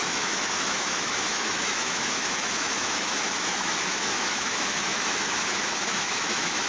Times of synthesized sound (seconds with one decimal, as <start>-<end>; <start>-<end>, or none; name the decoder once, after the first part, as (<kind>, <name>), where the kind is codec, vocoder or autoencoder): 0.0-6.7 (autoencoder, DAC-VAE)